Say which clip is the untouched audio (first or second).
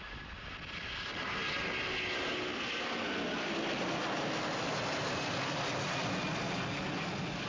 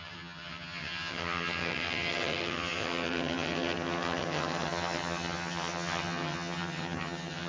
first